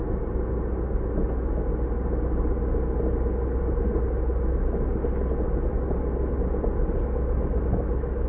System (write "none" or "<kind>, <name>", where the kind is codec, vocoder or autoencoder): none